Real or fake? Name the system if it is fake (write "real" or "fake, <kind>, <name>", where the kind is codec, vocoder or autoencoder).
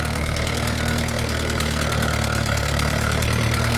fake, codec, SNAC